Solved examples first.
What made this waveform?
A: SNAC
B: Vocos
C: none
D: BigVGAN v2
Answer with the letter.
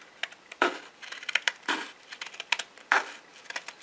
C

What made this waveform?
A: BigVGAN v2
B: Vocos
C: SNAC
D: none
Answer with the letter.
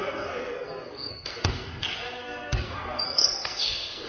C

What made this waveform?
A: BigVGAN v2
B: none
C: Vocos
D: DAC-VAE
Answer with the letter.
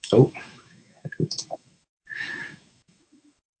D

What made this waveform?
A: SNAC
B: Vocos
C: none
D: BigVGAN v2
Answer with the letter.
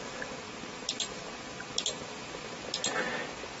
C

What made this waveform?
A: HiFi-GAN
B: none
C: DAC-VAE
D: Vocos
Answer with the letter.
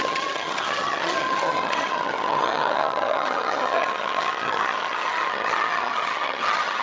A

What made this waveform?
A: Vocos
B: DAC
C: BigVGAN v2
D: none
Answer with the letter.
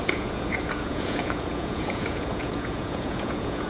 A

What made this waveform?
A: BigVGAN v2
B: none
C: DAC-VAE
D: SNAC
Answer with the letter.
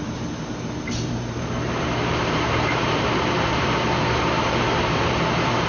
A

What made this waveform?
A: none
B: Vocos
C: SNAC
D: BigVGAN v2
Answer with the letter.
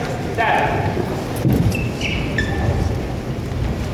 A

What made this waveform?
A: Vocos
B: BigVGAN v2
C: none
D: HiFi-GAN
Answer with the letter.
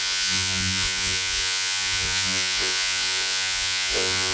A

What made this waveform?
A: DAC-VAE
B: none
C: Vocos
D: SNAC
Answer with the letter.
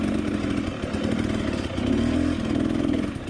B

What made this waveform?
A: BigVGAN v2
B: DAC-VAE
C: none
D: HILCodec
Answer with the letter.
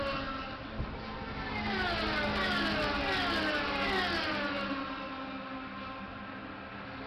C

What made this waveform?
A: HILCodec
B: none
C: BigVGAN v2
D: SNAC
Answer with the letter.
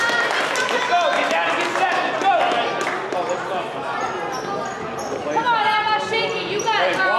B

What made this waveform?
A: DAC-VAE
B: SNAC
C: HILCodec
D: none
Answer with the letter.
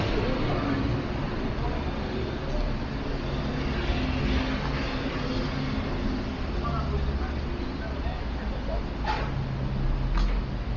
D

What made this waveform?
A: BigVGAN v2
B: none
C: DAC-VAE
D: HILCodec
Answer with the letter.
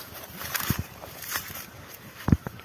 A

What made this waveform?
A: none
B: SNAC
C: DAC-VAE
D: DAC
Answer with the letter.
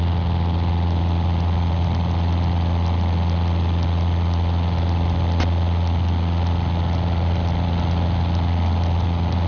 A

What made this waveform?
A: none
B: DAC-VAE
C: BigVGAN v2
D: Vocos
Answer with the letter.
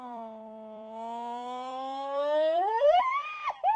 C